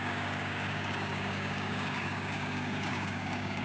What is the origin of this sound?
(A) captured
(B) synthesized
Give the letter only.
B